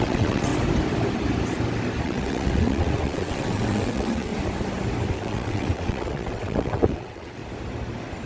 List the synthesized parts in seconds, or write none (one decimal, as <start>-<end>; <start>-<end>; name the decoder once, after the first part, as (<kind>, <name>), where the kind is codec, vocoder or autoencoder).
0.0-0.5 (vocoder, WaveNeXt); 2.0-4.3; 5.1-7.4